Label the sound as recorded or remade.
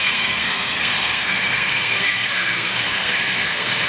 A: remade